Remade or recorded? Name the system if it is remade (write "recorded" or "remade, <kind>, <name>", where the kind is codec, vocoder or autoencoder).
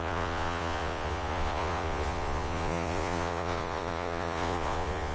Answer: remade, vocoder, Vocos